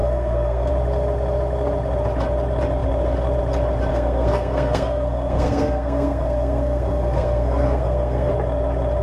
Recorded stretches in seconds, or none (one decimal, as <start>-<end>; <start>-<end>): 0.7-3.9; 8.3-9.0